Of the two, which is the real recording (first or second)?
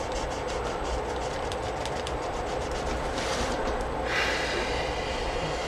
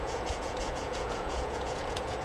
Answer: first